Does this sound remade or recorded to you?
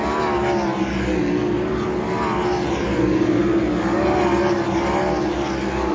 recorded